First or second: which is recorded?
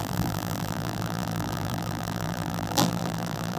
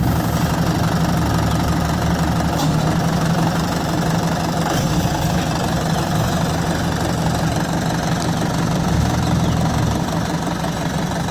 second